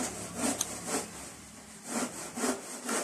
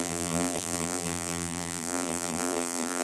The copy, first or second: second